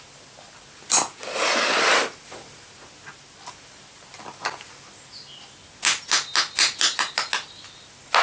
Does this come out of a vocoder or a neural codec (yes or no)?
no